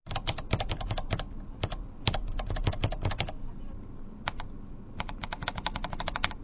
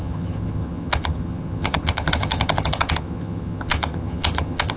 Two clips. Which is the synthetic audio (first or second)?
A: second